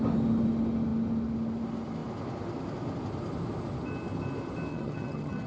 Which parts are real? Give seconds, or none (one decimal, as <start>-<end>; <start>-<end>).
0.0-4.7

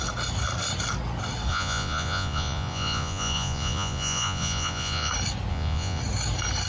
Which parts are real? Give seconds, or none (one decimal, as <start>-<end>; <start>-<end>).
0.0-1.5; 5.1-5.5; 6.0-6.7

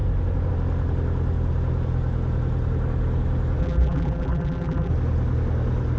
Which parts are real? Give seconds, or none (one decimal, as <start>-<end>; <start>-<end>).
0.0-3.6; 4.9-6.0

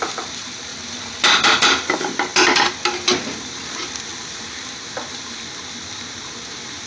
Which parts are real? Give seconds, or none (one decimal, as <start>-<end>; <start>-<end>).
none